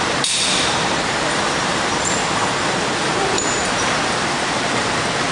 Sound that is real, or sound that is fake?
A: fake